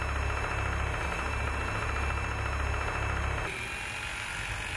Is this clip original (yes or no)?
yes